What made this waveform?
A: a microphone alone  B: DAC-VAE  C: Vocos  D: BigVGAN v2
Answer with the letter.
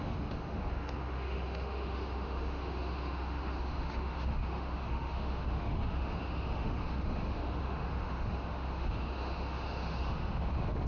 B